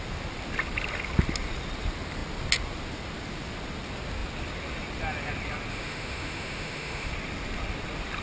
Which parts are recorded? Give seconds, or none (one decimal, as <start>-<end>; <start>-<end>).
0.0-5.7; 7.1-8.2